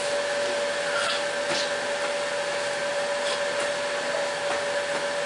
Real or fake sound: real